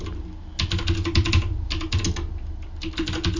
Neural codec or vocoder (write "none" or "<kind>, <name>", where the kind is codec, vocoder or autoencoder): none